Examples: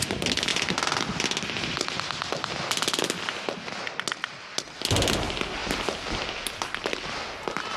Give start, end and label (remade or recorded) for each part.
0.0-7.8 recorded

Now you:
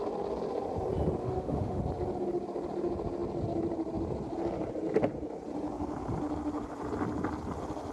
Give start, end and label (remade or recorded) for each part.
0.0-1.2 recorded; 1.2-1.8 remade; 1.8-7.9 recorded

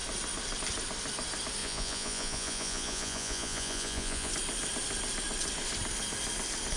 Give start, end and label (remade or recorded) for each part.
0.0-1.6 recorded; 1.6-4.3 remade; 4.3-6.8 recorded

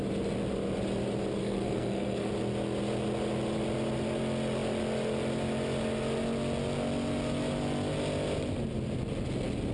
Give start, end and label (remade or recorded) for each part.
0.0-1.4 recorded; 1.4-2.3 remade; 2.3-9.7 recorded